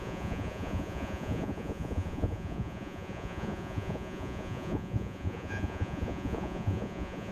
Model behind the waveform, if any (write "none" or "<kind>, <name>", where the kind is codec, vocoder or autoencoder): vocoder, Vocos